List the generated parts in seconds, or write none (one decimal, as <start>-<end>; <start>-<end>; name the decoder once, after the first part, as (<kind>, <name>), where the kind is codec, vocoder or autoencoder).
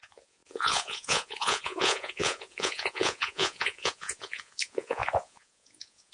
0.0-6.1 (vocoder, Vocos)